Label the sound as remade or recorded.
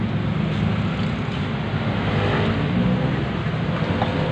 recorded